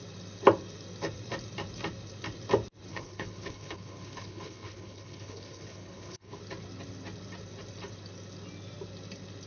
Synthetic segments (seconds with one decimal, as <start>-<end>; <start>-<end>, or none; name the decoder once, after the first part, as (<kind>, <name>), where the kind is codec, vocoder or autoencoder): 2.9-6.4 (codec, HILCodec)